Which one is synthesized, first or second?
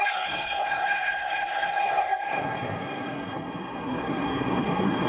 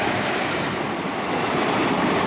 first